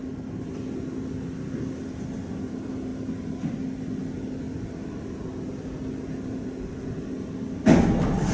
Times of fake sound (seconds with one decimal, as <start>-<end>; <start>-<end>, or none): none